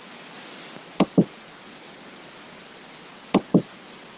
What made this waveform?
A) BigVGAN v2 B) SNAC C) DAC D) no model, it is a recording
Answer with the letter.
D